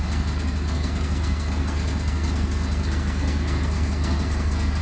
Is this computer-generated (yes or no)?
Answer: yes